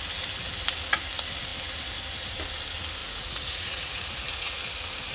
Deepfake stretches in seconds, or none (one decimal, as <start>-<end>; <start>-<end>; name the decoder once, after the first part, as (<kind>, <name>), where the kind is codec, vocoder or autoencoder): 3.0-4.6 (vocoder, Vocos)